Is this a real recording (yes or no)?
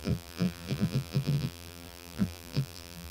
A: no